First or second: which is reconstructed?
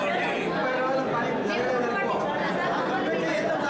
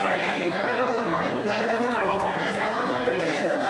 second